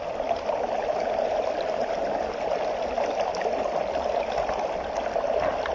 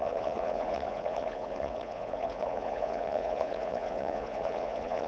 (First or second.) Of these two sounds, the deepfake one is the second